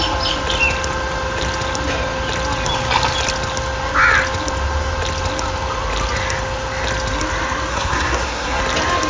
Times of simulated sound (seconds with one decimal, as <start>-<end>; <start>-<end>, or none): 7.7-8.6

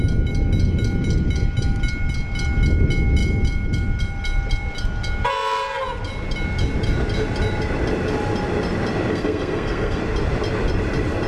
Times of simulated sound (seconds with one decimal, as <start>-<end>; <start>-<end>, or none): 9.1-10.0

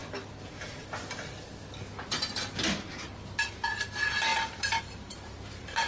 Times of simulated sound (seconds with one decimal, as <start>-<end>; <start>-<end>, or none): 4.3-5.9

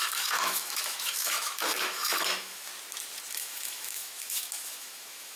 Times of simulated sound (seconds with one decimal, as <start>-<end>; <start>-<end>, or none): 0.0-2.7; 3.3-5.4